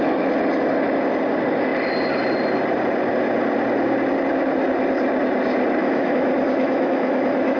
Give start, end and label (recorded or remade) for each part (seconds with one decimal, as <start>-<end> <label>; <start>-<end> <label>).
0.0-5.8 recorded; 5.8-7.6 remade